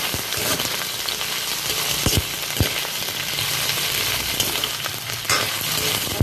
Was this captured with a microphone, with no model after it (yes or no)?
no